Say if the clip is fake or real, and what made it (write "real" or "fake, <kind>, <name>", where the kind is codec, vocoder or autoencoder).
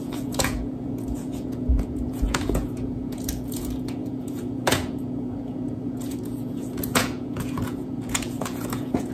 fake, vocoder, Vocos